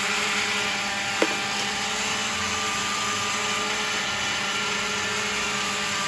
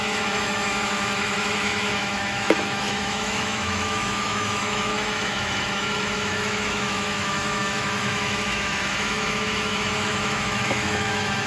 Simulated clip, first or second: second